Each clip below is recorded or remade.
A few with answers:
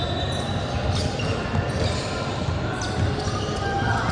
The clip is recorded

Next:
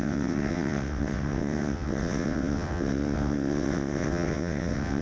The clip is remade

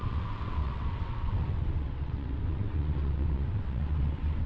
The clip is remade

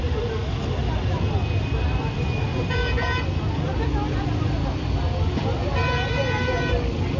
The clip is recorded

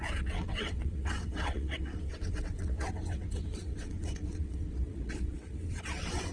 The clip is remade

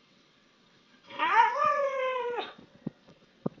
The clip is remade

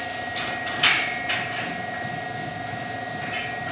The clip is recorded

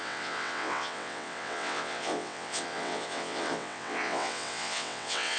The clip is remade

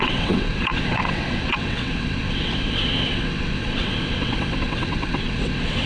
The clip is remade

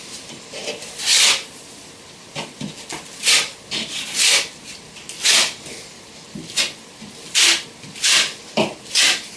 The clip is recorded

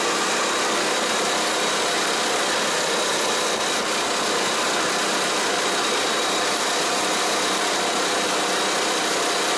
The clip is recorded